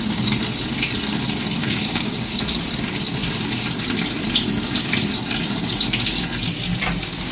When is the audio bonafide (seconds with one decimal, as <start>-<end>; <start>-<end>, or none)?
0.0-1.6; 2.4-7.3

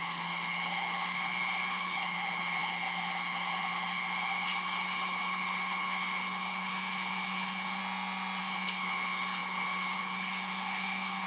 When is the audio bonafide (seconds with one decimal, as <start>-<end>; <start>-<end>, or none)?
7.8-8.4

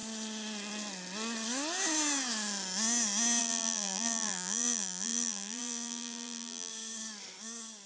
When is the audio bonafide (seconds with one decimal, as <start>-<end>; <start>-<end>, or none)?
0.0-3.4; 6.7-7.9

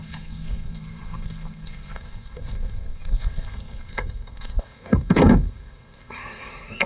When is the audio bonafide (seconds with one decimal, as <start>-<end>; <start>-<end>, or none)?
none

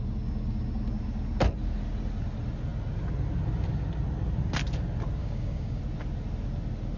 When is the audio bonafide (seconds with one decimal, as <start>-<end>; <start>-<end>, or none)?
0.0-5.2; 5.8-7.0

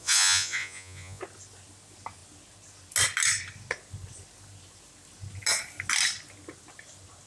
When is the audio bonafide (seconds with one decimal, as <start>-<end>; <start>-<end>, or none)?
1.2-7.3

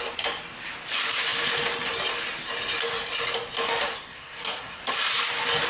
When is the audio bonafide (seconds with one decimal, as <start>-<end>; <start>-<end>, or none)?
0.0-3.9; 4.8-5.7